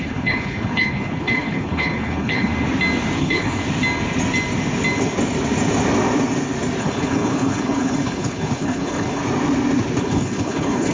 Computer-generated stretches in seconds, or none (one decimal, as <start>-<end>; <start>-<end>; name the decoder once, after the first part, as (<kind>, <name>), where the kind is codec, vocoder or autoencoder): 0.0-2.5 (codec, HILCodec); 3.2-3.6; 6.8-9.2; 10.0-10.9